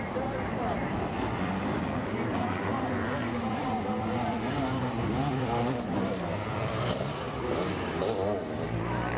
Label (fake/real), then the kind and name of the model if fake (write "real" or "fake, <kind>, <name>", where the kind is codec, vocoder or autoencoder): fake, vocoder, BigVGAN v2